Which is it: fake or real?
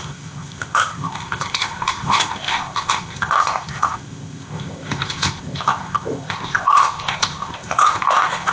fake